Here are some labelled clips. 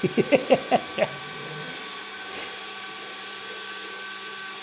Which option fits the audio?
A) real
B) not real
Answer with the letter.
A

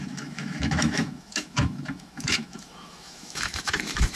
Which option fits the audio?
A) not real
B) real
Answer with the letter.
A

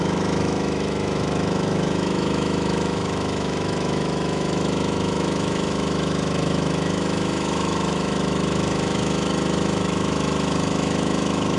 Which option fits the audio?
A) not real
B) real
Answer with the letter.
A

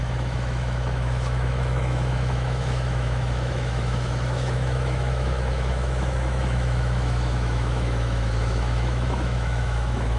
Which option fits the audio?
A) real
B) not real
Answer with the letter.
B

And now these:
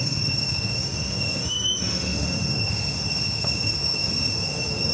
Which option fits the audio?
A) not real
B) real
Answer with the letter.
A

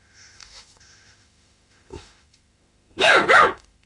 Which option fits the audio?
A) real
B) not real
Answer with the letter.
B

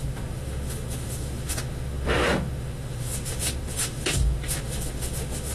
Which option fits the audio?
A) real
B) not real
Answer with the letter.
B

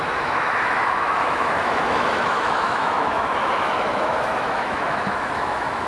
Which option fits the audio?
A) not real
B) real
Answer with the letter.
A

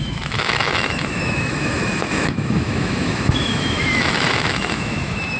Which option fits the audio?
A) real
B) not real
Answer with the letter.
B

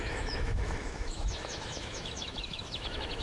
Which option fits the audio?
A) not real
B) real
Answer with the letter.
A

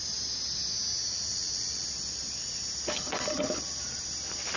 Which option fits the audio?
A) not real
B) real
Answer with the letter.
B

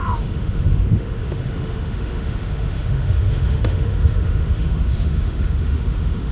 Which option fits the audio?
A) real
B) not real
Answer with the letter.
B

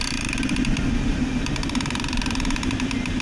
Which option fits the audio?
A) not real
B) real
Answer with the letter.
B